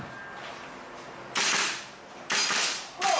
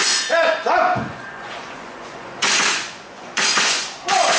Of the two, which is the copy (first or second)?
second